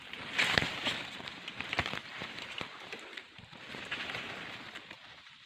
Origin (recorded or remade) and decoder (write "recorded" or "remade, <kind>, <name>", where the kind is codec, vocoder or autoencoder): remade, vocoder, BigVGAN v2